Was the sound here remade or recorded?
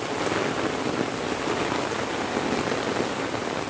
recorded